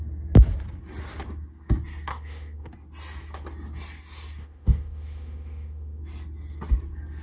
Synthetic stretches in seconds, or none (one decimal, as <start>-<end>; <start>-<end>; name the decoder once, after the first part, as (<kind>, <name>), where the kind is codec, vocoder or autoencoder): 2.1-2.7 (autoencoder, DAC-VAE); 4.4-6.0